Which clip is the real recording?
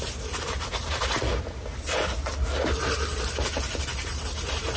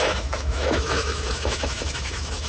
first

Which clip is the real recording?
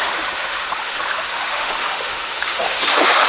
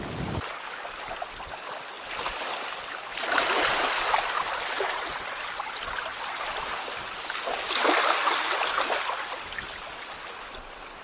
second